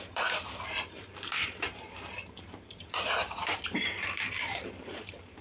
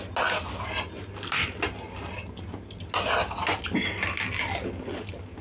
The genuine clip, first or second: second